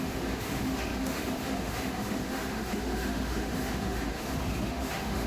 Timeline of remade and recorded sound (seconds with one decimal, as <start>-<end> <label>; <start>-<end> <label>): 0.0-5.3 remade